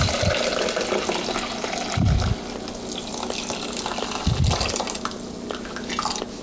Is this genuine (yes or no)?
yes